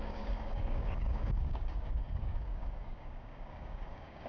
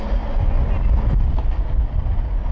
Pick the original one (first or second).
second